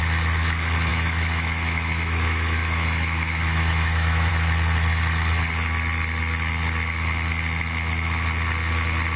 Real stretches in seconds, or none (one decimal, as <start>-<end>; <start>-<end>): 0.0-0.9; 4.3-9.2